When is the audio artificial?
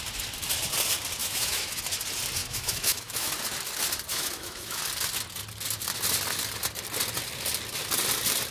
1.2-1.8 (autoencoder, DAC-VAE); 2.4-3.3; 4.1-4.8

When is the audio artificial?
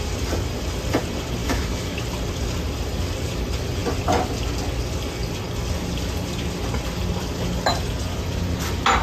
1.4-2.0 (autoencoder, DAC-VAE)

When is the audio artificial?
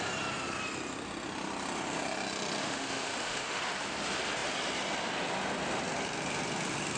2.6-3.6 (autoencoder, DAC-VAE)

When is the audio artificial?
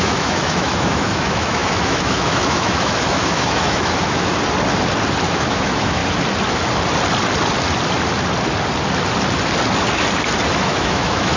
0.0-4.3 (autoencoder, DAC-VAE); 5.3-6.0; 10.6-11.4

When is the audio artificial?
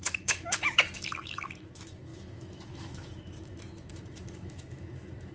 0.0-5.3 (autoencoder, DAC-VAE)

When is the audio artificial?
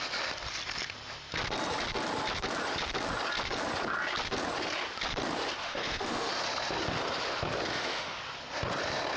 5.6-6.3 (autoencoder, DAC-VAE); 7.7-8.2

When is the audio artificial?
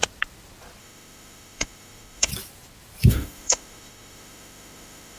0.8-2.3 (autoencoder, DAC-VAE); 3.1-5.2